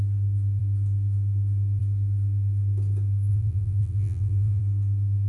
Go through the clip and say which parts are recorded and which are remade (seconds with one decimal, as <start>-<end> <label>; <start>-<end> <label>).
0.0-3.3 recorded; 3.3-4.6 remade; 4.6-5.3 recorded